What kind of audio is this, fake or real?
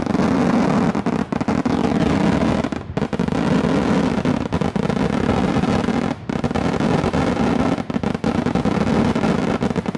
real